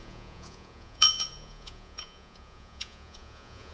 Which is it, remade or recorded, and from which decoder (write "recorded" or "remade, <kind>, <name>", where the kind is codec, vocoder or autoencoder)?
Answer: remade, vocoder, Vocos